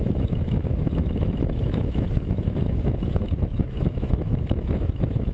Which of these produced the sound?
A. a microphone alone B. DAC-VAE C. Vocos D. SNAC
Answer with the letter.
B